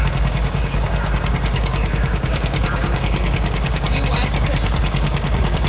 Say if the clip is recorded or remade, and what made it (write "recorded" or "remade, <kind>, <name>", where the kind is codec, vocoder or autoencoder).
remade, codec, DAC